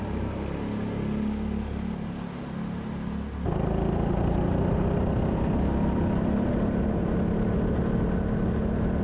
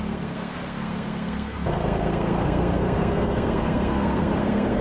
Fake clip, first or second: second